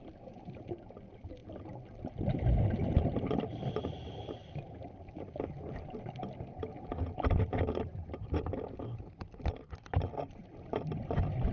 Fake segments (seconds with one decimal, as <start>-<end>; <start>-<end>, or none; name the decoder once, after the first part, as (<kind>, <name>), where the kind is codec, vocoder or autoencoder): none